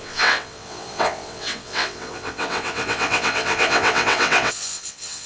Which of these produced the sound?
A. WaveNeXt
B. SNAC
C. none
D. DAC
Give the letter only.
A